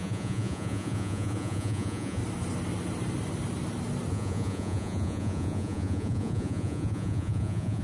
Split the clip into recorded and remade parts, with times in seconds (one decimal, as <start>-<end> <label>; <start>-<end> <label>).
0.0-2.2 remade; 2.2-4.1 recorded; 4.1-7.8 remade